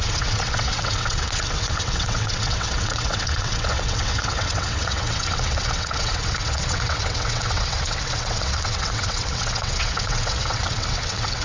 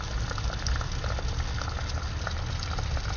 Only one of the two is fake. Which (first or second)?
first